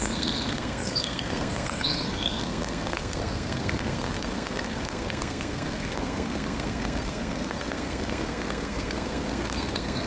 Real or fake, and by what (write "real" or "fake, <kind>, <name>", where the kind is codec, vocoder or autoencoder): fake, codec, SNAC